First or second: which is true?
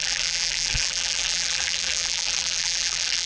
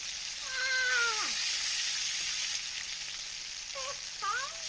second